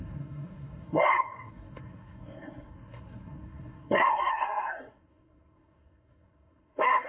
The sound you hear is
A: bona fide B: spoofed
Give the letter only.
B